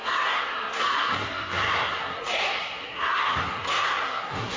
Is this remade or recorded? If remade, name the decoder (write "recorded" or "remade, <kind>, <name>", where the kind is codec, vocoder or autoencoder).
remade, codec, SNAC